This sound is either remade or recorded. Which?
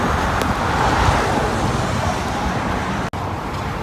recorded